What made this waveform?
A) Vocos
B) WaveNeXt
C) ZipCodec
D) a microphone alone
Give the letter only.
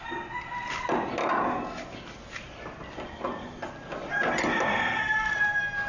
D